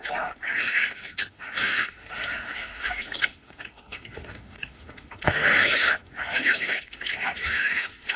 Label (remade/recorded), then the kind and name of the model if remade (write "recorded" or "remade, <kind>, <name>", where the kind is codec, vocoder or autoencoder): remade, autoencoder, DAC-VAE